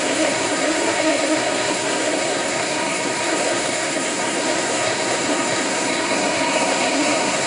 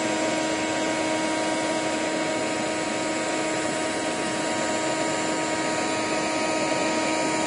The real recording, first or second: second